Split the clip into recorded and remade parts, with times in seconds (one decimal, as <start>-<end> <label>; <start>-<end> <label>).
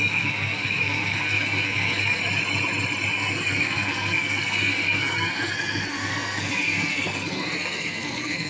0.0-2.2 remade; 2.2-3.1 recorded; 3.1-8.5 remade